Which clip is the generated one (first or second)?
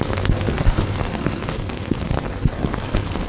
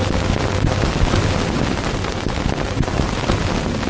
first